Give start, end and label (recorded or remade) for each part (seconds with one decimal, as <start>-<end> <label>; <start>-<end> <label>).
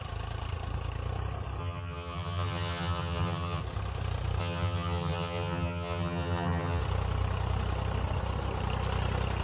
0.0-1.6 recorded; 1.6-3.6 remade; 3.6-4.4 recorded; 4.4-6.8 remade; 6.8-9.4 recorded